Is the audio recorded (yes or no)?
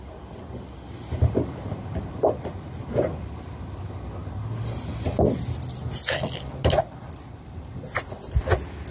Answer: yes